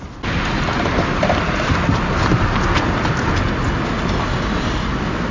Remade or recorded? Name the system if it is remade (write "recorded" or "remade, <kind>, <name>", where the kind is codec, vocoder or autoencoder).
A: recorded